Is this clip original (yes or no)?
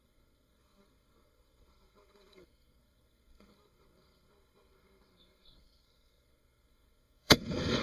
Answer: no